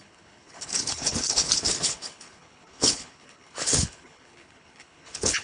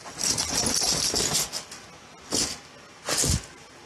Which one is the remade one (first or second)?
first